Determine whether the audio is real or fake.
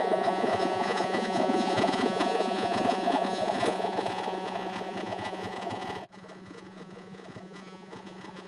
fake